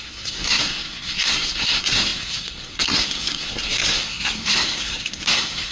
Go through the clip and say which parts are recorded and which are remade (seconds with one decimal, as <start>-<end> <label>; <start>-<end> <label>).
0.0-5.7 remade